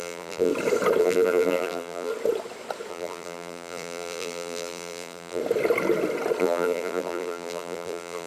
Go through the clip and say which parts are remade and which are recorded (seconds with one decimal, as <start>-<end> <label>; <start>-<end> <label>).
0.0-0.5 remade; 0.5-1.0 recorded; 1.0-2.1 remade; 2.1-2.9 recorded; 2.9-5.4 remade; 5.4-6.4 recorded; 6.4-8.3 remade